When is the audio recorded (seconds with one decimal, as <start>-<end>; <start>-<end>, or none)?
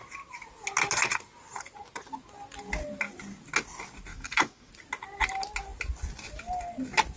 0.0-4.1; 4.7-7.2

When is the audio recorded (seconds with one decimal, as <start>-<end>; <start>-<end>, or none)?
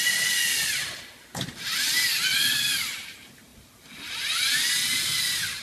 0.0-5.6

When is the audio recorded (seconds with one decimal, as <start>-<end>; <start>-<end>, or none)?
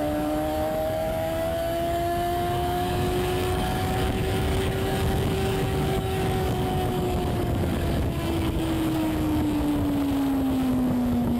9.7-10.7